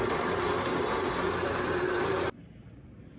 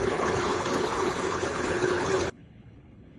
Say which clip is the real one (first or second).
first